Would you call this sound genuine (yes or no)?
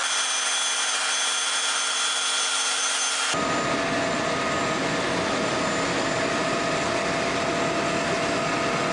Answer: yes